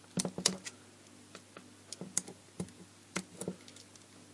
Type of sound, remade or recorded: recorded